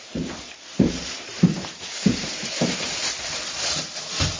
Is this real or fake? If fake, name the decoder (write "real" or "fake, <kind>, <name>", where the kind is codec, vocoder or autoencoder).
fake, vocoder, BigVGAN v2